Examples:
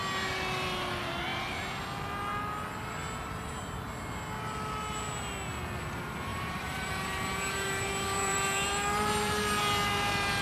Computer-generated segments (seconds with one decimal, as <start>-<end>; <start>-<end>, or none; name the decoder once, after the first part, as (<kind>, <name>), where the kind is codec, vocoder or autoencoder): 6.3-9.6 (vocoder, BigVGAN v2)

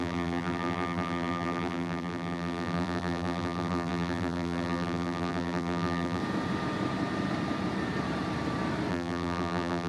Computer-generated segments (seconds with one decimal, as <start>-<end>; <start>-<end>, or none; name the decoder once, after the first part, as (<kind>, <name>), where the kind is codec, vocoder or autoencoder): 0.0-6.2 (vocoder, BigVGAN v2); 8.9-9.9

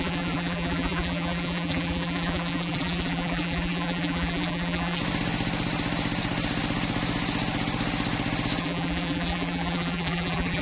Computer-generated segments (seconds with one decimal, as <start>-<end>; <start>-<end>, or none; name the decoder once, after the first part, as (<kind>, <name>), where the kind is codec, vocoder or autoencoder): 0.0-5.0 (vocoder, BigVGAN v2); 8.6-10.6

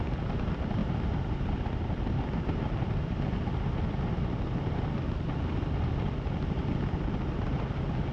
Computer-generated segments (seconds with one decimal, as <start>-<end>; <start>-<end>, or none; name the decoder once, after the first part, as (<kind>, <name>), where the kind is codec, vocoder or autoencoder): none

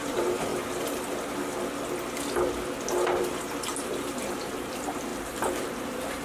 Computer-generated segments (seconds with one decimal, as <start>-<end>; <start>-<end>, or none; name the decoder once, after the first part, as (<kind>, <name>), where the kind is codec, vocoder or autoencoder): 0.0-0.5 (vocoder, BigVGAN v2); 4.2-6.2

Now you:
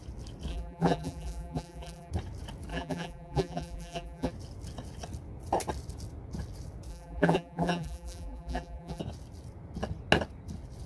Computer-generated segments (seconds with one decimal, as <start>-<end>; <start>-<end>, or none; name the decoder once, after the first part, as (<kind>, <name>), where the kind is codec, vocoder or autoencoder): 0.5-2.1 (vocoder, BigVGAN v2); 2.7-4.3; 6.9-9.0

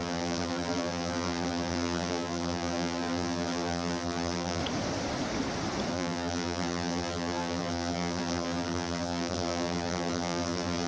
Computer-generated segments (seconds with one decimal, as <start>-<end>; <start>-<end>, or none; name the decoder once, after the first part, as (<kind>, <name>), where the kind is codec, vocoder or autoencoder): 0.0-4.6 (vocoder, BigVGAN v2); 5.9-10.9